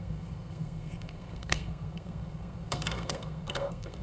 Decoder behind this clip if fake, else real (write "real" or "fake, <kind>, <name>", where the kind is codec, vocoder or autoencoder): fake, codec, SNAC